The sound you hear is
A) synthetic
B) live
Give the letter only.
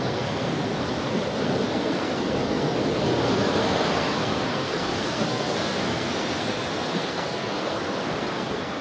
A